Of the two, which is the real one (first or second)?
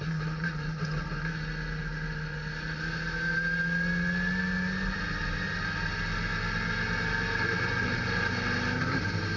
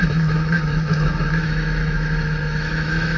first